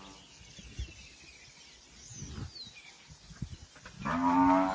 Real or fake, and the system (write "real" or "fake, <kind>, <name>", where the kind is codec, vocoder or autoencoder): real